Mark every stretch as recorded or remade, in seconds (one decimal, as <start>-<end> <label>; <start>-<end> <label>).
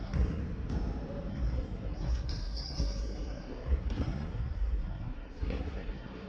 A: 0.0-0.4 remade; 0.4-1.3 recorded; 1.3-6.3 remade